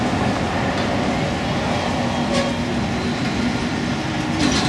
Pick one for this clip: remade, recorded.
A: recorded